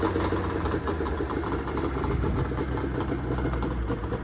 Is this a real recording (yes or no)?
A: yes